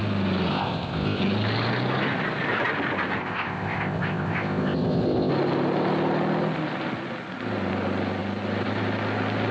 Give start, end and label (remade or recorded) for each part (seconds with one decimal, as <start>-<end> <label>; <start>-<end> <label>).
0.0-0.5 recorded; 0.5-1.2 remade; 1.2-3.2 recorded; 3.2-5.3 remade; 5.3-9.5 recorded